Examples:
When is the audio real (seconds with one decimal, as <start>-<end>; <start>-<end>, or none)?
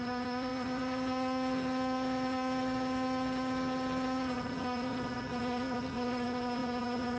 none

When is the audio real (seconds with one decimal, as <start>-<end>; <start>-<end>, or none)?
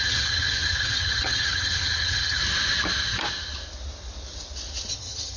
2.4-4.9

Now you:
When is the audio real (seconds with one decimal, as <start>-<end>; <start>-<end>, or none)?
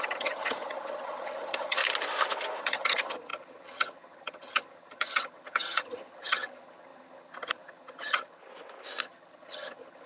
1.8-2.6; 8.4-9.0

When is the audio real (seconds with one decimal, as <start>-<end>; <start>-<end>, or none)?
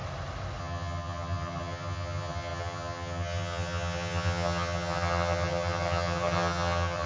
0.0-0.6